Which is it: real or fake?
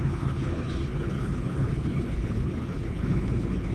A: fake